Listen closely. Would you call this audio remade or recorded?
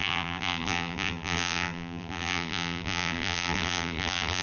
remade